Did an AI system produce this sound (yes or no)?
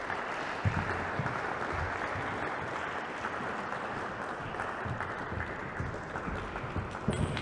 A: no